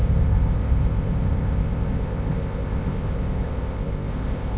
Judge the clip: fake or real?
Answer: fake